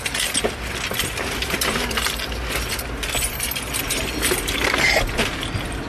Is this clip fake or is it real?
real